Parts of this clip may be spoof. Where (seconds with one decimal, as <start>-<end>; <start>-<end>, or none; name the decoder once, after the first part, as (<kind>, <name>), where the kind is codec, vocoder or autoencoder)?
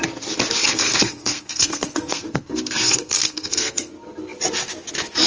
0.7-3.9 (codec, SNAC)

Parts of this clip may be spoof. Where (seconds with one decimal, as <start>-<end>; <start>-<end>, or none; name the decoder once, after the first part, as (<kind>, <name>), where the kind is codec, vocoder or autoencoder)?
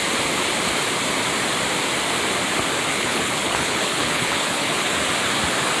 2.9-4.9 (codec, HILCodec)